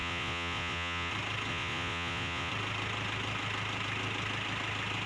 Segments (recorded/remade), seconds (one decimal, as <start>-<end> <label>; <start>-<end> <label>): 0.0-1.1 remade; 1.1-1.5 recorded; 1.5-2.5 remade; 2.5-5.1 recorded